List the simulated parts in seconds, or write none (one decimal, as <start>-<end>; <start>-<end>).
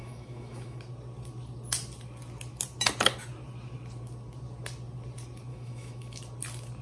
0.0-0.8; 5.5-6.2